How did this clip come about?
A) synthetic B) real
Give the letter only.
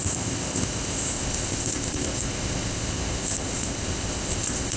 A